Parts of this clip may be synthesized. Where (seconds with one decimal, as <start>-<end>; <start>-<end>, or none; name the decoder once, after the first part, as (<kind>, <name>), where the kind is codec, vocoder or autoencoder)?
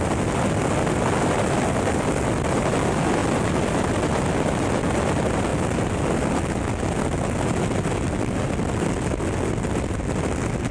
none